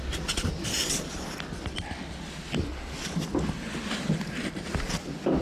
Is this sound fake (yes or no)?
no